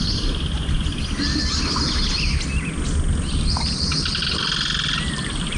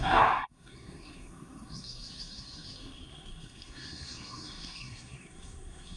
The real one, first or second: first